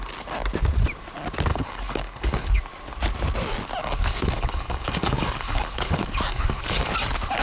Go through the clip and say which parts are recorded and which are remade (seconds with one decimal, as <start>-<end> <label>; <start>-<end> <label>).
0.0-1.5 recorded; 1.5-2.6 remade; 2.6-3.8 recorded; 3.8-6.9 remade; 6.9-7.4 recorded